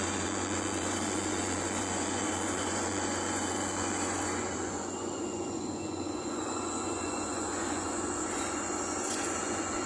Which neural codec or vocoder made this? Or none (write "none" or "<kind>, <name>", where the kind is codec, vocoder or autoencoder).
vocoder, Vocos